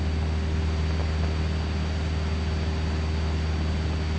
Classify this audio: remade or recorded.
recorded